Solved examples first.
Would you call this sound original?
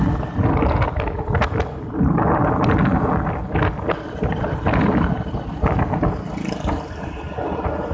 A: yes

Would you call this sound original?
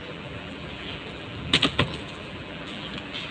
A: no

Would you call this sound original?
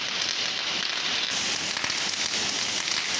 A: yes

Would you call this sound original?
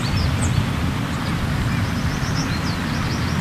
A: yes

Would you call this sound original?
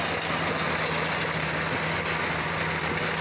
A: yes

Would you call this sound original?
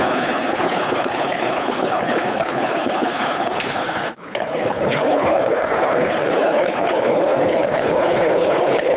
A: no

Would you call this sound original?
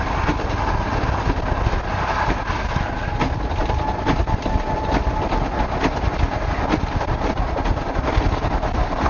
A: yes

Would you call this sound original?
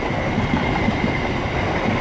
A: yes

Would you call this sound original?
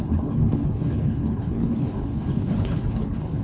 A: no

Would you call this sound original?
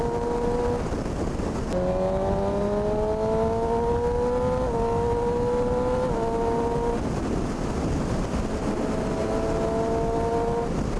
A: yes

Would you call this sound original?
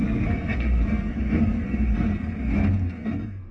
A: no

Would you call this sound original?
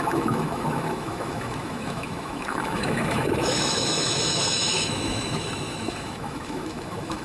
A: no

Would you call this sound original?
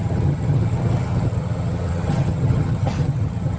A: no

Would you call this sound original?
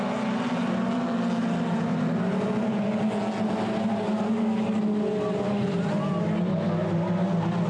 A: yes